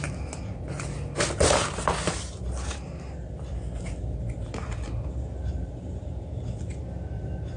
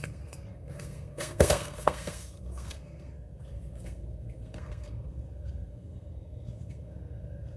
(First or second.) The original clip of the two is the first